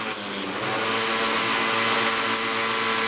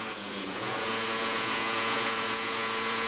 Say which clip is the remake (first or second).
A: second